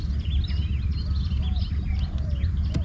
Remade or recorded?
recorded